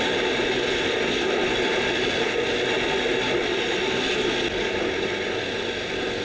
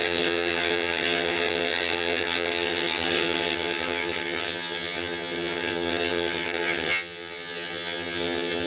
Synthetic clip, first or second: second